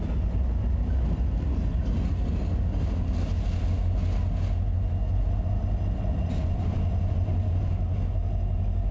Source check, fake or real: real